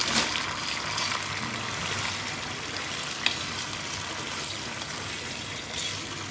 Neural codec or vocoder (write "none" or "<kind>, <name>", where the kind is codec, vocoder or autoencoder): none